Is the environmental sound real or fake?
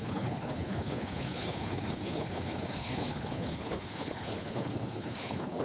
fake